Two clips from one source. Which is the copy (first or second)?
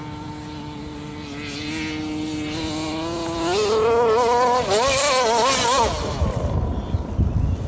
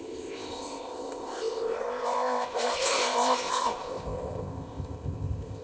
second